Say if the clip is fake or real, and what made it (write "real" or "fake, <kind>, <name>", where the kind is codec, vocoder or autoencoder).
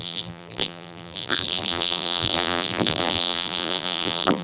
fake, vocoder, BigVGAN v2